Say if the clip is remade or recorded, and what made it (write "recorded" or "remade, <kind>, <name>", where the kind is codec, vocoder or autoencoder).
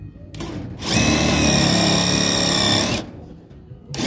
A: recorded